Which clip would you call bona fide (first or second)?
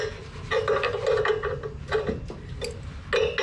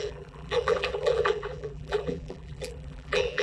first